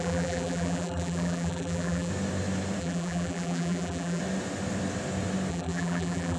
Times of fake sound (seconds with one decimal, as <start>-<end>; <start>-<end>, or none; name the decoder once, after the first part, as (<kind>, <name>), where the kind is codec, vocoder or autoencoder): 0.0-2.1 (vocoder, BigVGAN v2); 2.8-4.2; 5.5-6.4